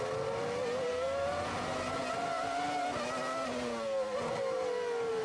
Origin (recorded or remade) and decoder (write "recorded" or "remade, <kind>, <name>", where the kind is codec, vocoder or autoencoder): recorded